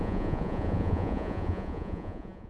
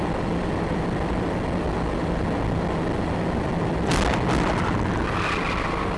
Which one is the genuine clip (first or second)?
second